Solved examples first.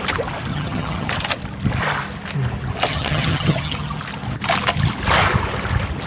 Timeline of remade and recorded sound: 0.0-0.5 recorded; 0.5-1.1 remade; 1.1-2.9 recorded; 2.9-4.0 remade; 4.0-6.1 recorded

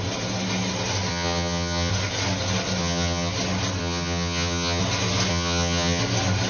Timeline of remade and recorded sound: 0.0-1.1 recorded; 1.1-1.9 remade; 1.9-2.8 recorded; 2.8-3.3 remade; 3.3-3.8 recorded; 3.8-4.8 remade; 4.8-5.3 recorded; 5.3-6.0 remade; 6.0-6.5 recorded

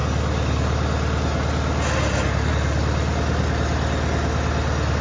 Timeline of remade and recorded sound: 0.0-5.0 recorded

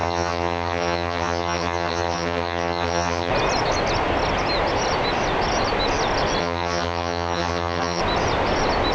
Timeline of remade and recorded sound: 0.0-3.3 remade; 3.3-6.4 recorded; 6.4-8.0 remade; 8.0-8.9 recorded

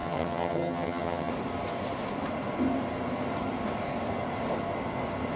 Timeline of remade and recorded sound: 0.0-1.3 remade; 1.3-5.4 recorded

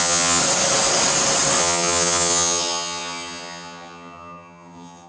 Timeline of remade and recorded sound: 0.0-0.4 remade; 0.4-1.6 recorded; 1.6-5.1 remade